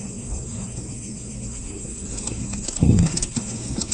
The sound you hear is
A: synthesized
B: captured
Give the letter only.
A